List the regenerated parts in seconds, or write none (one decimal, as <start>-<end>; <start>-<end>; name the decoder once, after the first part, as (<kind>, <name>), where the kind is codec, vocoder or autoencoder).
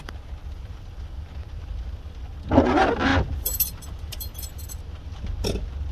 0.4-2.4 (vocoder, BigVGAN v2); 3.1-4.8